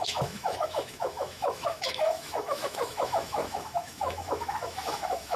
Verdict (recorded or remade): remade